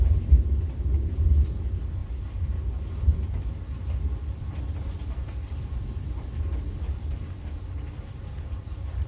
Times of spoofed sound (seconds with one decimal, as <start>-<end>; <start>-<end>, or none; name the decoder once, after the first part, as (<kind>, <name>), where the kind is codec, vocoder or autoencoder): none